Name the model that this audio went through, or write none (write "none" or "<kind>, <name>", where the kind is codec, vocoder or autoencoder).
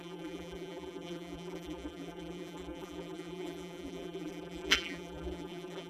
vocoder, BigVGAN v2